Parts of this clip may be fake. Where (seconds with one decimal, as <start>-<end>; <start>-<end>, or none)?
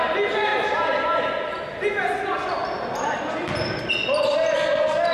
none